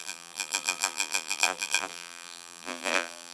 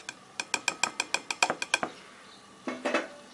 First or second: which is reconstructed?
first